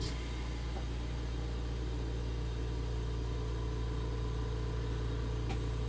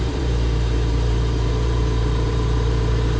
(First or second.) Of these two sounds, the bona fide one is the first